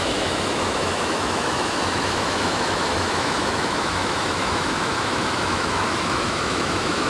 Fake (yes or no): yes